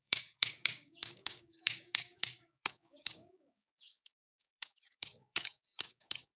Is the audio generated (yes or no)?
yes